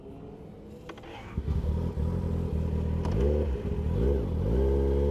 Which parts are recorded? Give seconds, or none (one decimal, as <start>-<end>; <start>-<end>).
0.0-1.1; 1.7-5.1